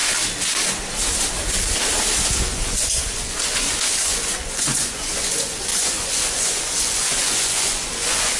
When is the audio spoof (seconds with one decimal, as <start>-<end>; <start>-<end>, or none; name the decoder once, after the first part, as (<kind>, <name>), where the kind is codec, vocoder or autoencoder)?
2.3-8.4 (vocoder, Vocos)